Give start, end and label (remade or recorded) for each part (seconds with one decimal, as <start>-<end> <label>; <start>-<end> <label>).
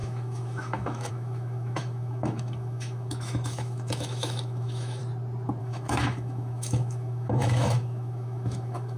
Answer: 0.0-5.0 remade; 5.0-5.6 recorded; 5.6-9.0 remade